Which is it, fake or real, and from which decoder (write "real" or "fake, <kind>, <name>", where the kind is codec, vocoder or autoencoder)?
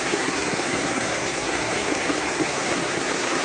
fake, codec, SNAC